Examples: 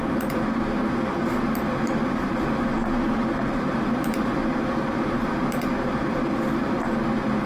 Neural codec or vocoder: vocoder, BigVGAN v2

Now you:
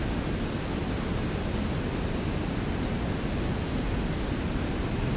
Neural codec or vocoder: none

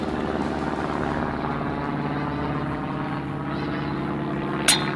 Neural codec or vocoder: none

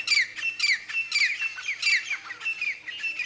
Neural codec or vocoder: none